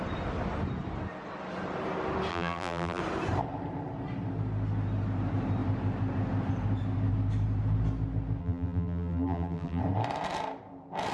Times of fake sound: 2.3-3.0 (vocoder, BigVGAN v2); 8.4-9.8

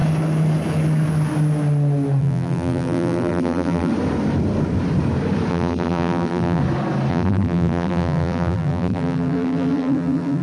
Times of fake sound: 2.2-3.9 (vocoder, BigVGAN v2); 5.5-6.6; 7.1-10.4

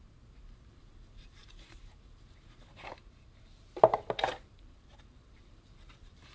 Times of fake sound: 0.0-1.4 (vocoder, BigVGAN v2); 4.2-6.3

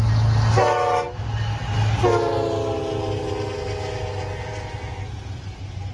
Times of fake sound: none

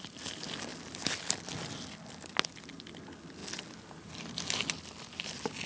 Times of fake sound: none

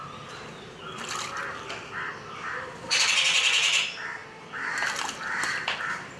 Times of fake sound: 0.0-6.2 (vocoder, BigVGAN v2)

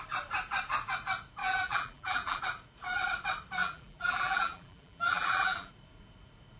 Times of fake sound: 1.4-2.4 (vocoder, BigVGAN v2); 3.6-5.7